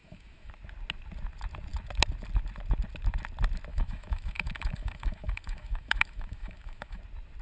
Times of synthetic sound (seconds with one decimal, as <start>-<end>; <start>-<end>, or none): 0.0-0.5; 3.7-7.0